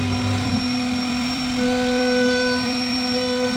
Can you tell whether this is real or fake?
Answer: fake